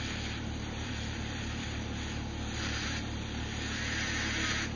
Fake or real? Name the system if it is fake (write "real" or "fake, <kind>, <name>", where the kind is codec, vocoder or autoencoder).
fake, vocoder, BigVGAN v2